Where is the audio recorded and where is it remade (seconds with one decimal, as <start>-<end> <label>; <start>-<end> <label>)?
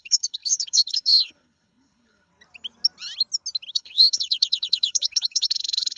0.0-2.3 remade; 2.3-3.7 recorded; 3.7-6.0 remade